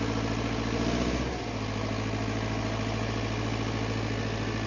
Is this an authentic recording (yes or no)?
yes